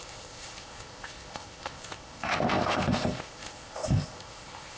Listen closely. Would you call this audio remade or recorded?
remade